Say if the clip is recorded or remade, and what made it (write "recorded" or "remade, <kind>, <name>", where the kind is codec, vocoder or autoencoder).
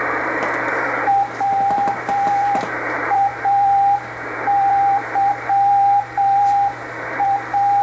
remade, vocoder, BigVGAN v2